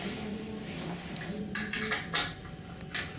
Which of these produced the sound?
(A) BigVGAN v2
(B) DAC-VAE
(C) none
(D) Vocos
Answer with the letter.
C